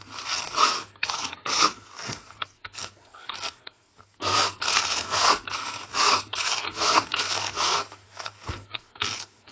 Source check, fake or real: fake